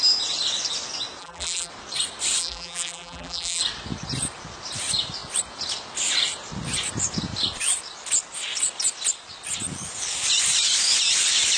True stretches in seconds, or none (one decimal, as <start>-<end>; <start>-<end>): 0.0-1.2; 1.7-2.4; 3.6-11.6